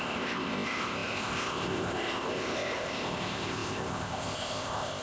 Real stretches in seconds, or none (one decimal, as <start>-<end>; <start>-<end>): none